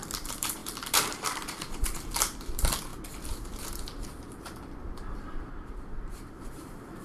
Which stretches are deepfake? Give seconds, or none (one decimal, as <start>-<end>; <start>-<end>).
0.0-2.9; 3.6-5.5; 6.4-7.0